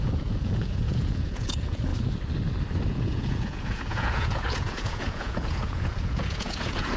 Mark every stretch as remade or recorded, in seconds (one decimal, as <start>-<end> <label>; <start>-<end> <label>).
0.0-1.9 remade; 1.9-2.9 recorded; 2.9-7.0 remade